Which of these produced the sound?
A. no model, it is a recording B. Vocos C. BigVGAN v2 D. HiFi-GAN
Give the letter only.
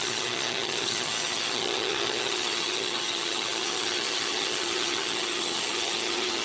D